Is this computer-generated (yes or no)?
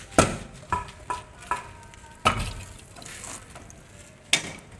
no